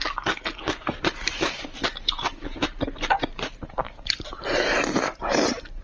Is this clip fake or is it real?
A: real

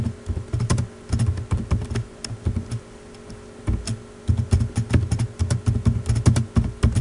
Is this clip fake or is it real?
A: real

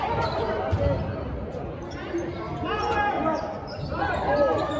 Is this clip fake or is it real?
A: real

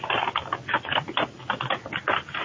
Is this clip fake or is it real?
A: real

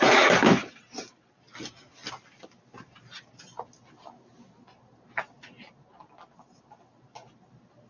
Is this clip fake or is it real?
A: real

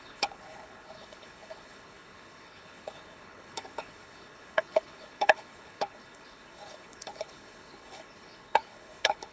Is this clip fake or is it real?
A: fake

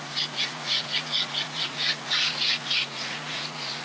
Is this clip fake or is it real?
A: fake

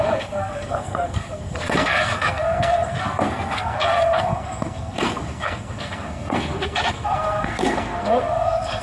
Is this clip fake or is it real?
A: fake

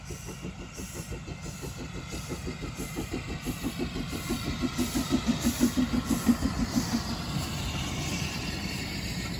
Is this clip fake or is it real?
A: real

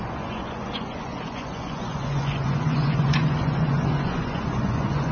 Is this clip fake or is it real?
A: fake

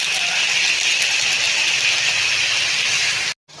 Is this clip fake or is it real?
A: real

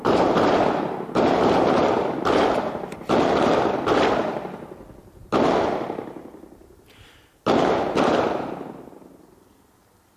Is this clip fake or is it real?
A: real